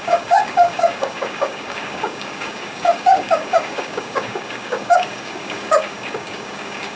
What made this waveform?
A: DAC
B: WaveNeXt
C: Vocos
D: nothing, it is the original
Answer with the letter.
A